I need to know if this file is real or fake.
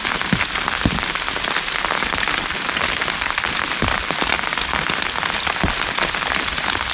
real